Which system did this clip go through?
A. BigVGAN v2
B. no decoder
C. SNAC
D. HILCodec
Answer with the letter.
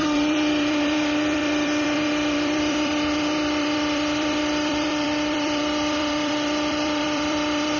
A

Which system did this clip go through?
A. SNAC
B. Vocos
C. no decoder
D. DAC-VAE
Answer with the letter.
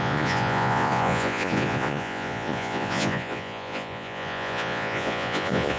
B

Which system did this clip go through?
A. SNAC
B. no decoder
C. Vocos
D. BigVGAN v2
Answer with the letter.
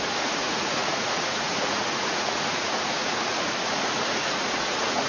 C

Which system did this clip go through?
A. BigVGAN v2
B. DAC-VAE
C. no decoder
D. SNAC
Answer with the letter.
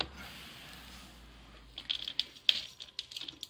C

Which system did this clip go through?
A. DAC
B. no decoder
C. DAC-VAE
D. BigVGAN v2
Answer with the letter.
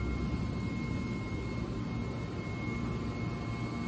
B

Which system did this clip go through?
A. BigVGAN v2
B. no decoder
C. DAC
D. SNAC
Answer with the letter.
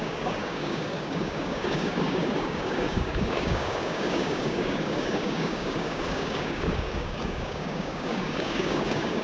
C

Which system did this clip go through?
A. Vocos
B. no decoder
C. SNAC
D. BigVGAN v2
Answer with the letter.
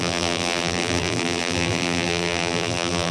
D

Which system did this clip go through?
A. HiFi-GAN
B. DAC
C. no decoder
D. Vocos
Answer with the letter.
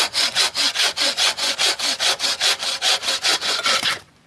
D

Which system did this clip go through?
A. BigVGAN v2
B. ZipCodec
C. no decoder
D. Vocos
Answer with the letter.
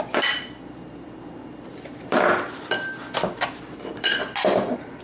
A